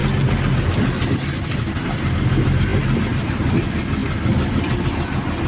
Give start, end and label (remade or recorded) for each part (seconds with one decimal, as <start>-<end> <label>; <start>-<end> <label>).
0.0-5.5 recorded